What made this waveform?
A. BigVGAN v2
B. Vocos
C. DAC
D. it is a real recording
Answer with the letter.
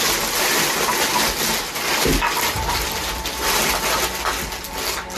D